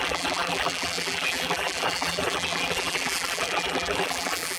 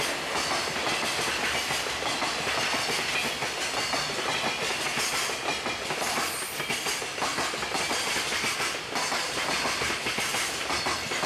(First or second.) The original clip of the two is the second